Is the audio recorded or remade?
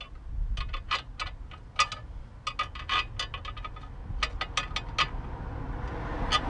recorded